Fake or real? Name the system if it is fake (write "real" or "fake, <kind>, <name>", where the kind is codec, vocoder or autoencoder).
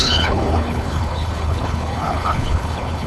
fake, codec, HILCodec